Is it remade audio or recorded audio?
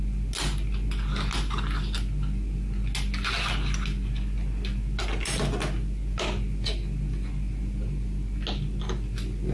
recorded